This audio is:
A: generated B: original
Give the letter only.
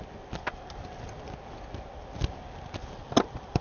B